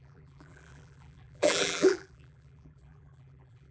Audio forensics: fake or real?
fake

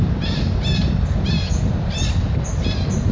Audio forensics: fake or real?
real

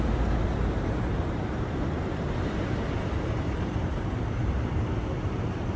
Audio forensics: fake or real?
fake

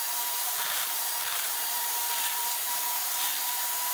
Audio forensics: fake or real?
fake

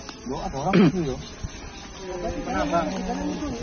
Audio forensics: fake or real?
real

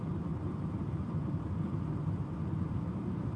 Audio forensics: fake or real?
fake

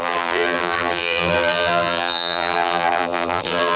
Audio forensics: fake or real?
fake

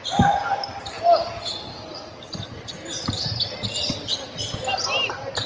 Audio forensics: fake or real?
real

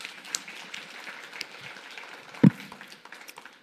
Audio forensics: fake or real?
real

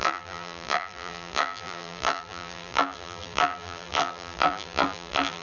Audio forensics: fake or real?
fake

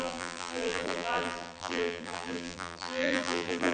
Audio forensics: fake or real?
fake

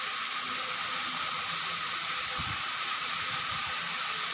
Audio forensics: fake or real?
fake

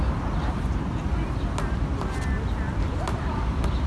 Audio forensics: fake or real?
real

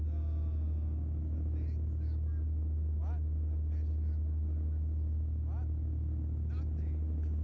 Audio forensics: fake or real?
real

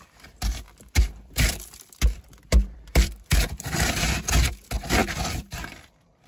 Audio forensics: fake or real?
fake